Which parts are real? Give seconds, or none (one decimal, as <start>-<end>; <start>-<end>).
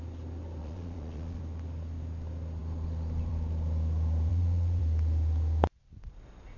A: 0.0-0.6; 1.4-4.3; 4.8-6.6